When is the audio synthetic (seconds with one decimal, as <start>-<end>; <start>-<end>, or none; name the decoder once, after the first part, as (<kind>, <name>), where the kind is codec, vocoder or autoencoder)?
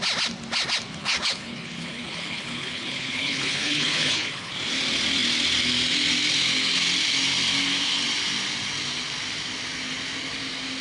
1.0-4.5 (codec, HILCodec)